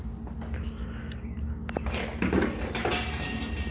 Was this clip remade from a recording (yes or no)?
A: no